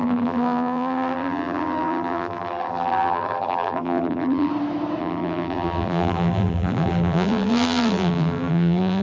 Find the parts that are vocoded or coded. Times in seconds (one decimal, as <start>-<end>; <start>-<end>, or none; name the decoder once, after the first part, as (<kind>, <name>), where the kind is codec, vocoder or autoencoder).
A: 0.0-4.5 (vocoder, BigVGAN v2); 5.0-9.0